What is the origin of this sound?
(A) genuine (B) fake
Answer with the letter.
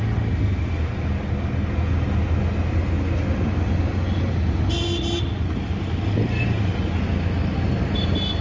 A